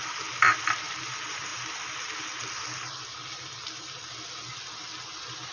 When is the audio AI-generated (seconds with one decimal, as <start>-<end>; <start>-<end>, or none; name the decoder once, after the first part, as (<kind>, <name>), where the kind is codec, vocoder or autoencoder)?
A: none